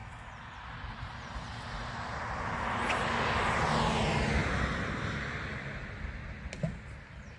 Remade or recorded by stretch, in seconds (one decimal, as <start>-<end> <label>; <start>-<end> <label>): 0.0-7.4 recorded